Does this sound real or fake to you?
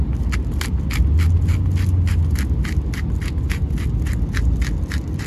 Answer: real